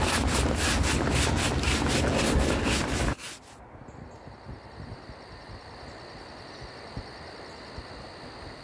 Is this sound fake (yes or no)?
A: no